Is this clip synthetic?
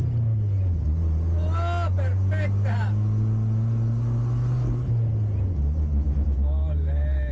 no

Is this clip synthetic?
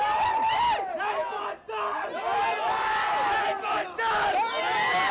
no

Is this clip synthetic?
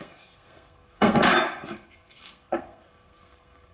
yes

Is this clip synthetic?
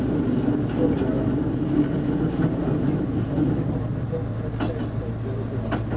no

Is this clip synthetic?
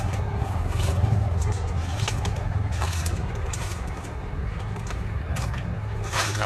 yes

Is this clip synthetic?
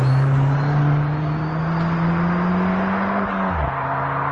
no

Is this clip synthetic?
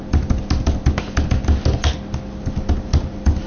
no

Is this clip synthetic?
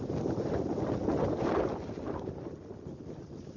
no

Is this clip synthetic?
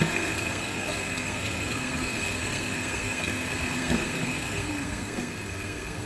yes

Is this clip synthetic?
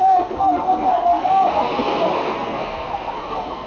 yes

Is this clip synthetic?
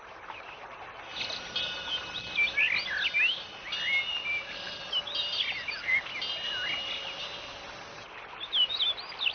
no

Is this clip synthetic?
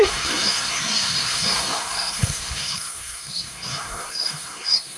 yes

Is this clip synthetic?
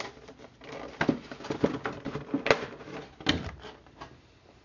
no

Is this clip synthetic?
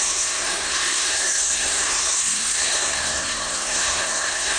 yes